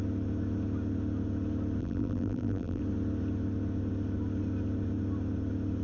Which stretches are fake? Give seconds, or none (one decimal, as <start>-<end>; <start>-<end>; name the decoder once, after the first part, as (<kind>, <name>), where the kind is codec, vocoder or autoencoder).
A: 1.8-2.8 (vocoder, BigVGAN v2)